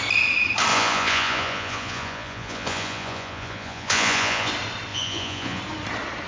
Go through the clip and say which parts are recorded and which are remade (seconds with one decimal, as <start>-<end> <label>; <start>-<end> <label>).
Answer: 0.0-0.7 recorded; 0.7-4.5 remade; 4.5-4.9 recorded; 4.9-5.6 remade; 5.6-6.3 recorded